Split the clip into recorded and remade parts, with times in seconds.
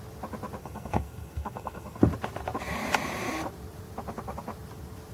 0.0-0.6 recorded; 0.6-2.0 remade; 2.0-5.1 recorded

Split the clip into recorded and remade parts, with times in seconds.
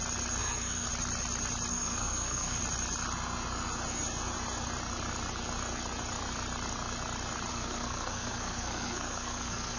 0.0-0.4 recorded; 0.4-0.9 remade; 0.9-1.7 recorded; 1.7-2.6 remade; 2.6-7.5 recorded; 7.5-9.8 remade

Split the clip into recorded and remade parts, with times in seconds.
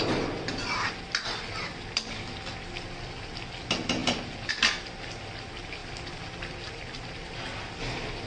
0.0-8.3 recorded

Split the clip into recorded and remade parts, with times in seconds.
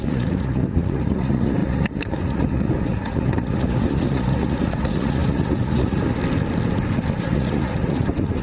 0.0-6.2 remade; 6.2-7.2 recorded; 7.2-8.4 remade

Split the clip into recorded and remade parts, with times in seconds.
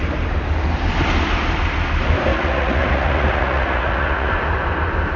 0.0-2.3 recorded; 2.3-4.3 remade; 4.3-5.2 recorded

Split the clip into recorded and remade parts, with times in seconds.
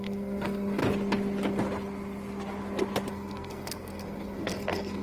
0.0-0.8 remade; 0.8-3.1 recorded; 3.1-5.0 remade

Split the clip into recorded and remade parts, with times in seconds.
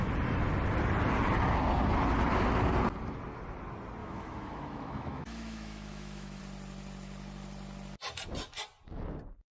0.0-4.0 recorded; 4.0-6.4 remade; 6.4-9.6 recorded